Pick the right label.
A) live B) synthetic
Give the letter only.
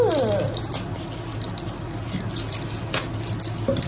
A